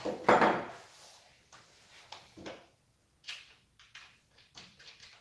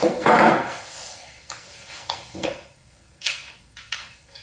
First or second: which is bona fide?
first